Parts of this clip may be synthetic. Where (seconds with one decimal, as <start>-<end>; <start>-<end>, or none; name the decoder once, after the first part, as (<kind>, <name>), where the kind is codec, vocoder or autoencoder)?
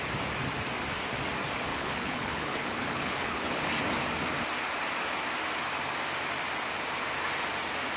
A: 1.7-3.7 (codec, HILCodec)